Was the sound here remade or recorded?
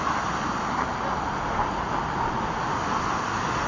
recorded